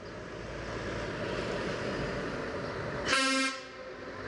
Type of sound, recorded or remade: recorded